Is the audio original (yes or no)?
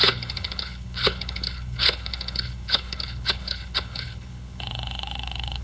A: no